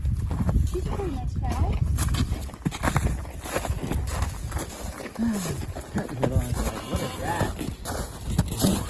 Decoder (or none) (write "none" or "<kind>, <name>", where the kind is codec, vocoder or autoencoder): none